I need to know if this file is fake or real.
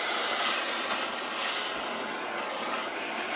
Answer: real